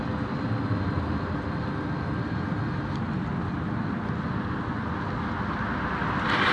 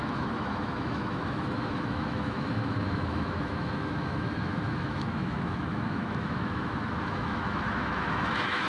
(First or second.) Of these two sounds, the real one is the first